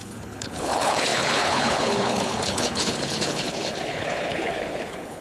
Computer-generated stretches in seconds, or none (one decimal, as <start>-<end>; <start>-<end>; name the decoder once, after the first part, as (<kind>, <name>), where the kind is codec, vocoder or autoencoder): 0.0-5.2 (codec, HILCodec)